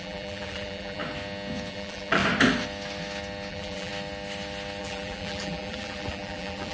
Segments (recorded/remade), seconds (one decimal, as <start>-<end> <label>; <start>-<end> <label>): 0.0-1.0 remade; 1.0-1.7 recorded; 1.7-2.2 remade; 2.2-3.5 recorded; 3.5-3.9 remade; 3.9-4.8 recorded; 4.8-6.7 remade